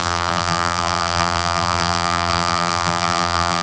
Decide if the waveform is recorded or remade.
remade